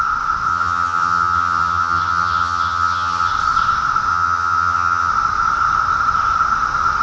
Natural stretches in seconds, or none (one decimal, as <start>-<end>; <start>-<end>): 0.0-0.5; 3.3-4.1; 5.1-7.0